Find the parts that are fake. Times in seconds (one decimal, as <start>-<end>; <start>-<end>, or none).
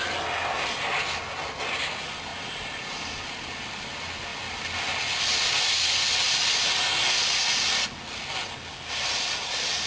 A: none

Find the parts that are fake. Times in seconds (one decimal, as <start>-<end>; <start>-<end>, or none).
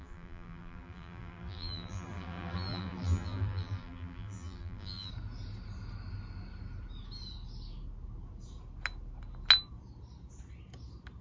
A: 0.0-5.1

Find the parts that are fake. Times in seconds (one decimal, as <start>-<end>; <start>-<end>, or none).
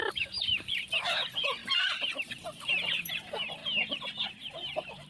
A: 0.0-3.6; 4.5-5.1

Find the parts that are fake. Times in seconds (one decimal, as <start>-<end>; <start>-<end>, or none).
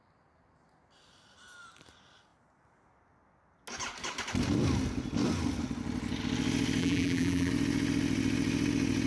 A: 6.8-7.5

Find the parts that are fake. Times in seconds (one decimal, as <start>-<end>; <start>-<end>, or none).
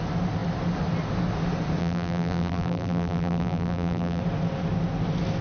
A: 1.8-4.2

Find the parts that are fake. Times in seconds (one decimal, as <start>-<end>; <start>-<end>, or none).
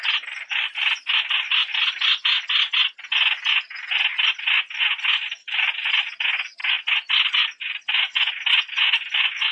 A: 5.4-5.9